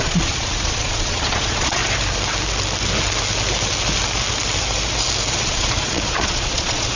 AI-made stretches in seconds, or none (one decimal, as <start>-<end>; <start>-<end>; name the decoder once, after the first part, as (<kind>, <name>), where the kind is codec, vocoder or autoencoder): 0.0-1.8 (vocoder, Vocos); 5.3-7.0